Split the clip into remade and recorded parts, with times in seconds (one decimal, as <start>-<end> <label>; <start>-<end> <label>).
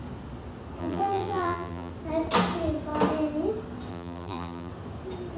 0.0-0.8 recorded; 0.8-1.9 remade; 1.9-3.9 recorded; 3.9-4.7 remade; 4.7-5.4 recorded